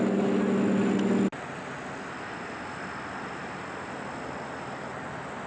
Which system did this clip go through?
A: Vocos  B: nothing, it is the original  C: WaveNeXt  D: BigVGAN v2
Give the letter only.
B